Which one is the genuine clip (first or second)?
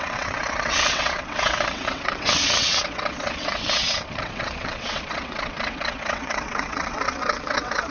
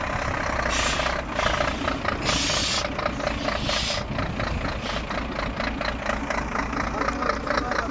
second